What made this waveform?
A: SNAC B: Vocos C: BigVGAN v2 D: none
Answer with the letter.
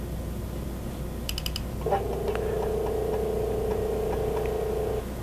D